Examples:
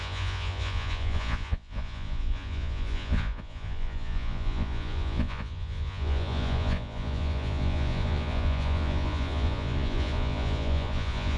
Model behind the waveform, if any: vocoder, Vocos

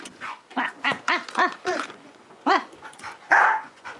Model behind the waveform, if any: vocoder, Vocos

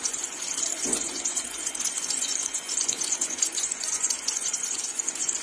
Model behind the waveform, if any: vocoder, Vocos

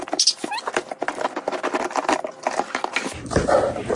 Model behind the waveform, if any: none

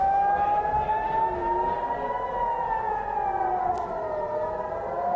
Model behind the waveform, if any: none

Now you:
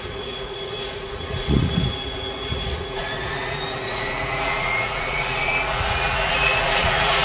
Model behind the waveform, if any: vocoder, Vocos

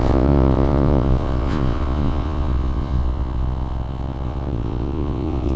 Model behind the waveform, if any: vocoder, Vocos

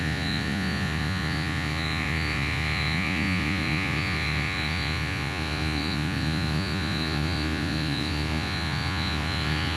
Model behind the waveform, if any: vocoder, Vocos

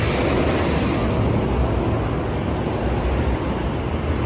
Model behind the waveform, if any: none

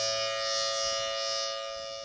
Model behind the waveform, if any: none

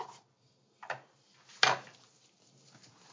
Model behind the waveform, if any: none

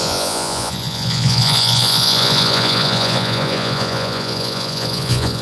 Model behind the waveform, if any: vocoder, Vocos